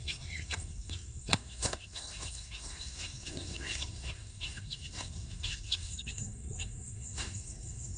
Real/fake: fake